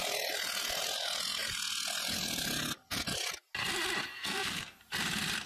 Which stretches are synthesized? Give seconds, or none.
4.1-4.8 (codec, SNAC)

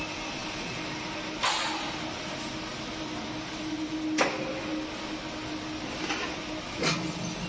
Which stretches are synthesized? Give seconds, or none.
none

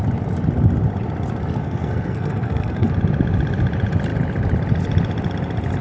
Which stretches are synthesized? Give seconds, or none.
1.6-2.9 (codec, SNAC)

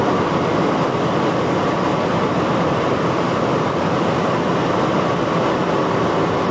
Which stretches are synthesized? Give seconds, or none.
none

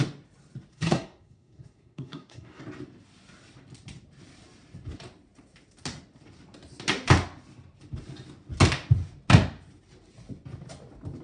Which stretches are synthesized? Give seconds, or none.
0.7-2.6 (codec, SNAC)

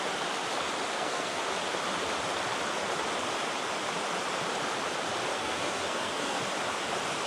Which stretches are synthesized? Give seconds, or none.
0.9-1.4 (codec, SNAC); 5.3-6.4

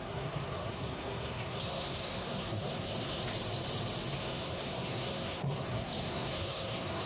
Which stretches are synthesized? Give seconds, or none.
0.0-3.2 (codec, SNAC); 4.2-7.1